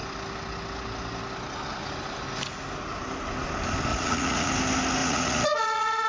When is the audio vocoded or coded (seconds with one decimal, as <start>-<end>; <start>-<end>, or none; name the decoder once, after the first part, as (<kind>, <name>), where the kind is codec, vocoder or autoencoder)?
3.9-4.5 (vocoder, Vocos); 5.0-6.1